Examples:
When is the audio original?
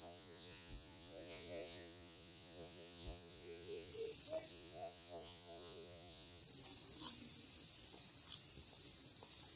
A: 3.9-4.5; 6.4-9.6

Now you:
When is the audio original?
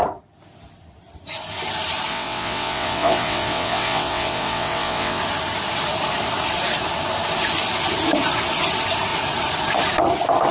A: 0.0-2.1; 5.2-10.5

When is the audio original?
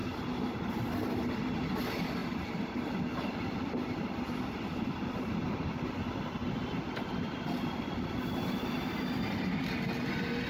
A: 0.0-2.2; 2.9-6.4; 7.1-10.5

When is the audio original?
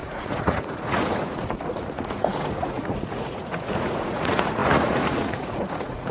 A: none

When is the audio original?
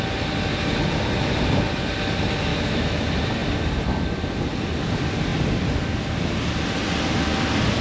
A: 0.0-2.5; 3.0-7.8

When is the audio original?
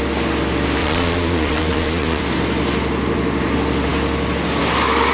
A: 0.0-0.8; 2.2-5.1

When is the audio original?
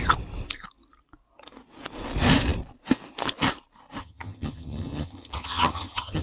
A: 0.0-4.0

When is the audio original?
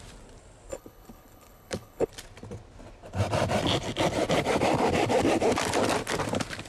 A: 0.0-0.7; 2.1-6.7